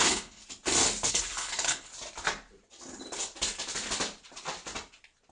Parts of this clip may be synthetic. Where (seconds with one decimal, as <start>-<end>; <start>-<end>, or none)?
0.0-0.4; 1.1-1.9